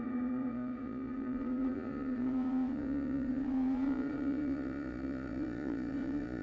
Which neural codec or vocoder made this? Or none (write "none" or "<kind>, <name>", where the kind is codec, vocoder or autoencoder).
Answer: vocoder, Vocos